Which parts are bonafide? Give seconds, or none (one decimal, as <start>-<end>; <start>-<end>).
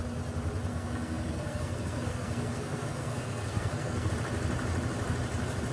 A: 0.0-0.7; 4.1-5.7